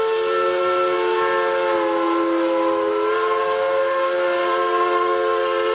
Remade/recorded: recorded